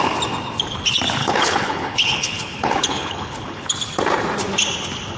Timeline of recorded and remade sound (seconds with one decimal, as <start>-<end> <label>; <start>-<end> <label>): 0.0-1.2 recorded; 1.2-3.7 remade; 3.7-5.2 recorded